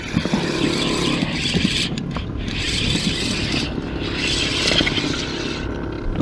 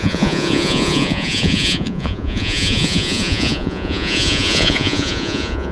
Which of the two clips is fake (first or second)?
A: second